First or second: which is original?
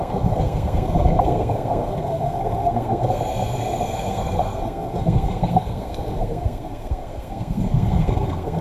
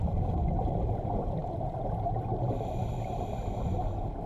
second